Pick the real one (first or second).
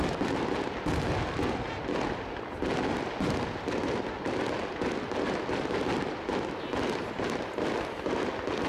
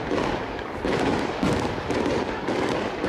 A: first